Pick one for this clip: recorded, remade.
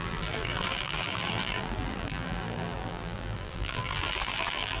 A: remade